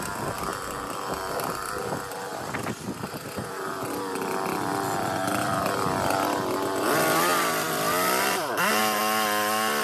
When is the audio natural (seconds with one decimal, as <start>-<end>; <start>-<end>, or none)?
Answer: 0.0-0.5; 1.7-7.3; 8.8-9.8